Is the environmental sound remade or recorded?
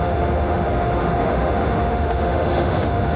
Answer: remade